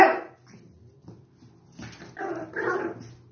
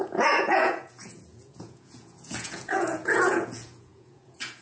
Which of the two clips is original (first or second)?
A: first